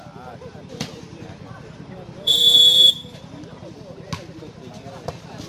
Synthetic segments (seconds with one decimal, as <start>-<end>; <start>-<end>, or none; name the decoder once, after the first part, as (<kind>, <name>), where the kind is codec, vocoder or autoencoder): 0.4-3.7 (vocoder, BigVGAN v2)